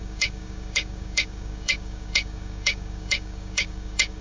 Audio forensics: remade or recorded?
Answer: remade